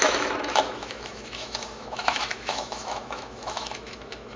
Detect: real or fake fake